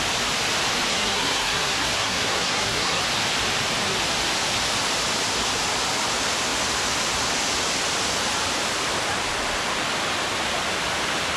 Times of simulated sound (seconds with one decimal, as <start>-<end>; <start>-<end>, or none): 0.9-3.0